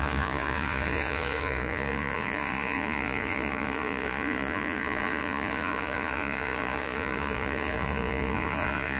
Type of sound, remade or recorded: remade